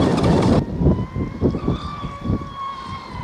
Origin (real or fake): real